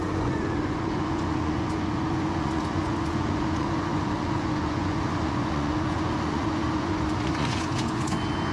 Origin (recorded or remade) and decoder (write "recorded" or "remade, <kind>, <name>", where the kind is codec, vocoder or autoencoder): remade, vocoder, Vocos